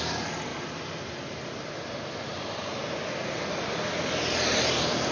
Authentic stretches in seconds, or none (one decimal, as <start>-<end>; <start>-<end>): 0.0-5.1